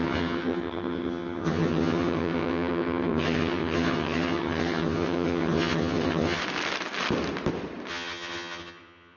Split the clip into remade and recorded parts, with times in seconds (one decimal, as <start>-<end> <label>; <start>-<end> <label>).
0.0-6.4 remade; 6.4-7.9 recorded; 7.9-9.2 remade